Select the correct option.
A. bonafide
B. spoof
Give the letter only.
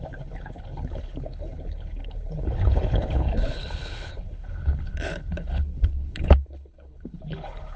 B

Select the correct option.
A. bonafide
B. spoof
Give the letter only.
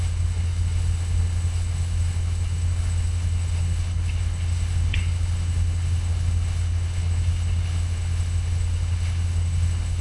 B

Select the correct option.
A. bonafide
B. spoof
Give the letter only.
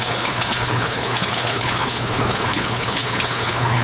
B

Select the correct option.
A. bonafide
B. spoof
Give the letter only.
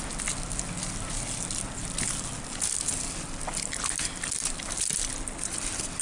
A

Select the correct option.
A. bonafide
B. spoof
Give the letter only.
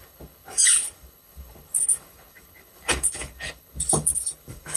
B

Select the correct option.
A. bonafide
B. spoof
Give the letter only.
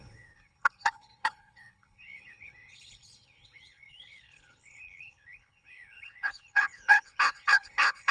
B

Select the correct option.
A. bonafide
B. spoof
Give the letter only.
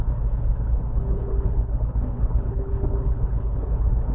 B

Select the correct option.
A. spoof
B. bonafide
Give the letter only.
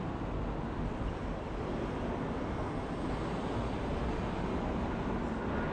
B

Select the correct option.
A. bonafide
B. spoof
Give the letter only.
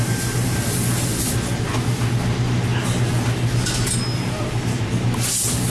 A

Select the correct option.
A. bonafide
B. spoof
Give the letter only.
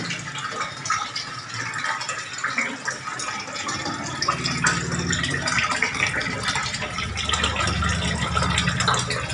A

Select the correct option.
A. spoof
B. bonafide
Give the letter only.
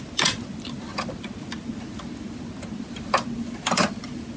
B